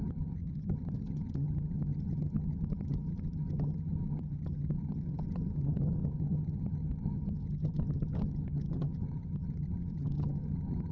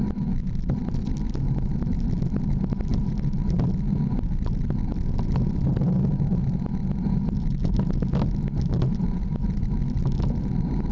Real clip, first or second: second